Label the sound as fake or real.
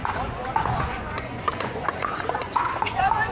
fake